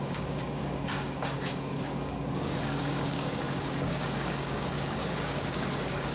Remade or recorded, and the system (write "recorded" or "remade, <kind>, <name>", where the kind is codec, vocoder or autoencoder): remade, codec, DAC